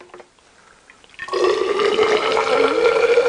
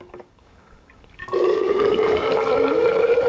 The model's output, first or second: second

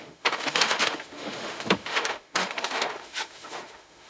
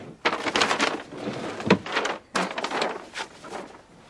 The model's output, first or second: first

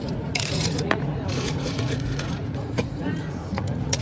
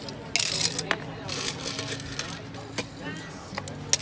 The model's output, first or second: first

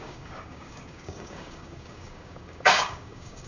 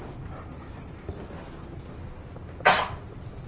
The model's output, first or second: first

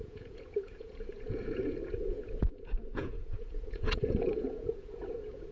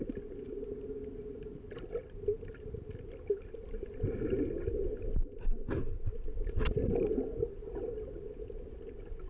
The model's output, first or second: first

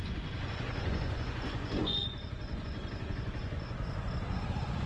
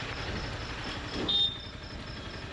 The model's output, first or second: first